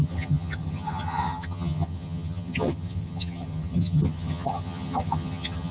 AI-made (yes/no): yes